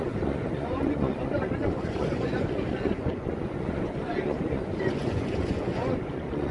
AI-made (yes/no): yes